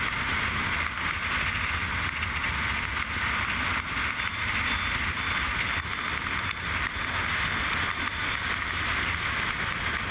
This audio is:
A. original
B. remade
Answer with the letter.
A